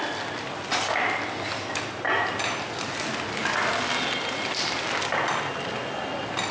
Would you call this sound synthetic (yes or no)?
no